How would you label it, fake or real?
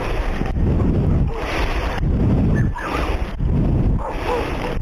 real